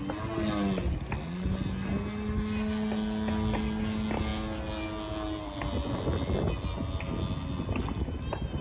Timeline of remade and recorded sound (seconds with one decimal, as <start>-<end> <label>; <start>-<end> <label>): 0.0-8.6 recorded